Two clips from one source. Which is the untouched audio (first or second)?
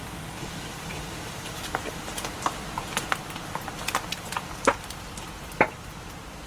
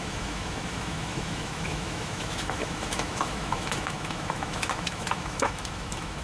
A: first